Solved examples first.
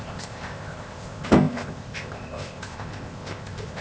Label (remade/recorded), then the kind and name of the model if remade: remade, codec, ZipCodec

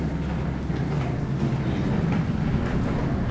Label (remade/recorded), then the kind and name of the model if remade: recorded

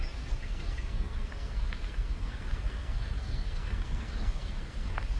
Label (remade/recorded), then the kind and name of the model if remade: remade, codec, SNAC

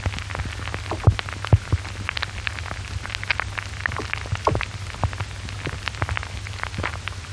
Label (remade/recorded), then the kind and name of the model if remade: recorded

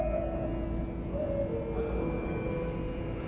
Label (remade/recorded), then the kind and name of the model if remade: recorded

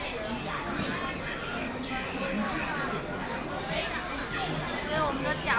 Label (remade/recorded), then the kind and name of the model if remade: recorded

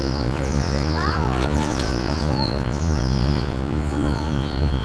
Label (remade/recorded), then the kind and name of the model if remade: remade, vocoder, Vocos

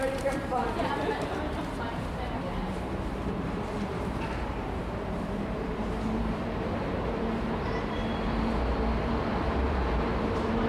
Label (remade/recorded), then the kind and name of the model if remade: remade, vocoder, BigVGAN v2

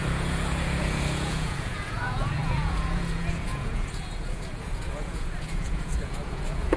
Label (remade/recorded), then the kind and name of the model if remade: remade, vocoder, Vocos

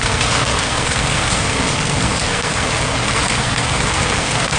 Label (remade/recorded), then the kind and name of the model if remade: remade, codec, SNAC